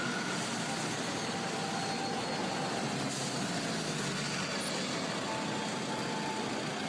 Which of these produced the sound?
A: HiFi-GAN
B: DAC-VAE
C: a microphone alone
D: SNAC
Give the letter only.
C